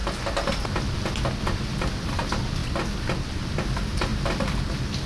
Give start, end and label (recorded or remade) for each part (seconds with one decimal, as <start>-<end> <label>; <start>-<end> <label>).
0.0-5.1 recorded